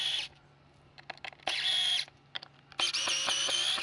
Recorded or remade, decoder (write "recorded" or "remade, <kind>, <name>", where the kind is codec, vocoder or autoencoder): recorded